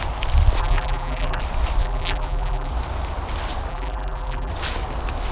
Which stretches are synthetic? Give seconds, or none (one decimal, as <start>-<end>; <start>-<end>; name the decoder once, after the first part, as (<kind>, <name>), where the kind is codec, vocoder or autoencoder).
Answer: 0.6-1.4 (vocoder, BigVGAN v2); 1.8-2.7; 3.7-4.5